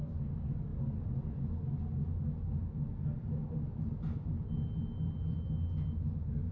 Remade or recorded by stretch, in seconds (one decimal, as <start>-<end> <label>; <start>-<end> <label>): 0.0-0.7 recorded; 0.7-1.4 remade; 1.4-6.5 recorded